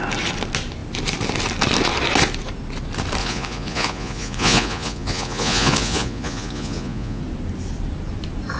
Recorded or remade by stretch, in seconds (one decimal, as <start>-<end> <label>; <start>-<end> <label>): 0.0-3.2 recorded; 3.2-7.2 remade; 7.2-8.6 recorded